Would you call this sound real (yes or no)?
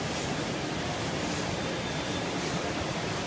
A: no